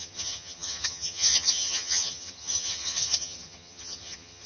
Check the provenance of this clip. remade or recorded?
remade